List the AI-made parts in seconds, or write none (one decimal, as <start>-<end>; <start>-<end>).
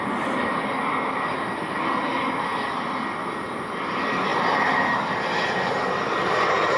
0.0-0.6; 1.5-4.3; 5.1-6.8